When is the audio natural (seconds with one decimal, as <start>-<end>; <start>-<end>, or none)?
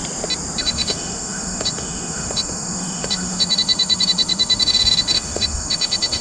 0.0-0.6